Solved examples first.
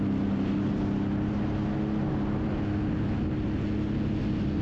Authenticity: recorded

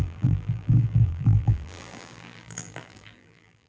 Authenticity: remade